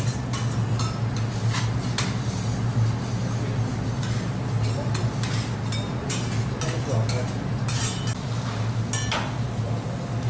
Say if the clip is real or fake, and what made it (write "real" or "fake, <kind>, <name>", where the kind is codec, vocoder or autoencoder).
real